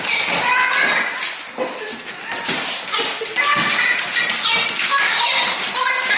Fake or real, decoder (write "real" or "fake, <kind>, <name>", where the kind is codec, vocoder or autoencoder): real